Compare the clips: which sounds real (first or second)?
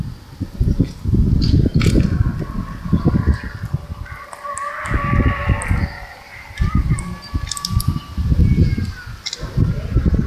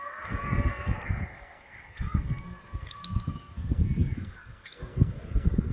first